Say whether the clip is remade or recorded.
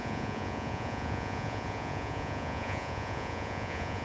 remade